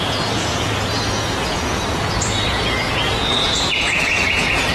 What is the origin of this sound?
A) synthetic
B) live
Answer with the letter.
A